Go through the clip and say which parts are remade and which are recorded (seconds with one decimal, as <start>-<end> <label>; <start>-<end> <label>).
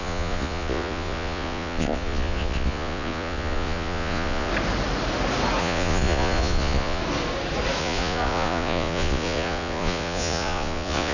0.0-4.5 remade; 4.5-5.6 recorded; 5.6-7.0 remade; 7.0-7.8 recorded; 7.8-11.1 remade